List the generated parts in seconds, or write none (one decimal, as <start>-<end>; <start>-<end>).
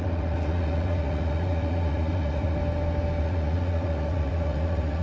0.0-2.6; 3.2-5.0